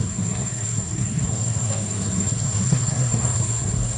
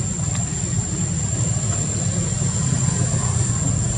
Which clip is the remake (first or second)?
first